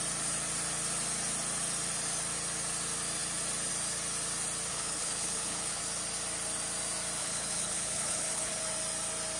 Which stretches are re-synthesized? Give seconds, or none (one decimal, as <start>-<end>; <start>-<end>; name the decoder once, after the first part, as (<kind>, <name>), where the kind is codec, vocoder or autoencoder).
4.7-5.8 (codec, HILCodec); 7.2-8.6